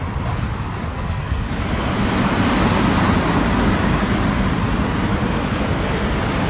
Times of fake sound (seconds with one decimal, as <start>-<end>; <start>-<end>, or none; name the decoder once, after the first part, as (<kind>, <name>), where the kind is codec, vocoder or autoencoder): 0.9-1.5 (codec, SNAC)